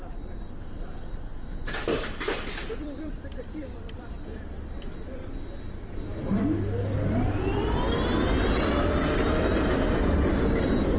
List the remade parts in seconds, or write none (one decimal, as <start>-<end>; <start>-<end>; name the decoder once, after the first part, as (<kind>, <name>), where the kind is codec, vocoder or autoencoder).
0.0-4.3 (vocoder, BigVGAN v2); 8.7-11.0